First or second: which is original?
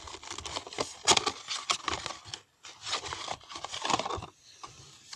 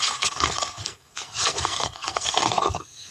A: first